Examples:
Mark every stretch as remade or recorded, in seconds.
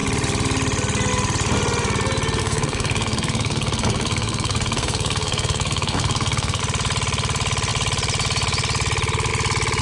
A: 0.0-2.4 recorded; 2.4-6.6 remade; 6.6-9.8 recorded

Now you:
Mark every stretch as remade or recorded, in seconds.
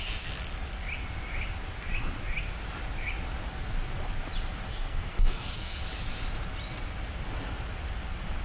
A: 0.0-4.7 recorded; 4.7-5.8 remade; 5.8-8.4 recorded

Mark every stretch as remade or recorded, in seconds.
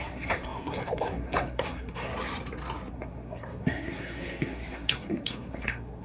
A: 0.0-2.1 remade; 2.1-2.9 recorded; 2.9-6.0 remade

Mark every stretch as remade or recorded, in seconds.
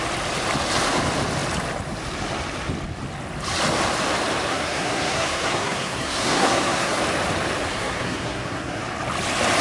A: 0.0-4.5 recorded; 4.5-7.0 remade; 7.0-7.7 recorded; 7.7-8.8 remade; 8.8-9.6 recorded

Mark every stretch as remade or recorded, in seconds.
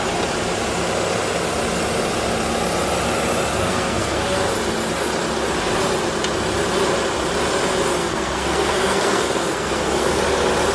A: 0.0-3.5 recorded; 3.5-4.5 remade; 4.5-8.0 recorded; 8.0-10.2 remade; 10.2-10.7 recorded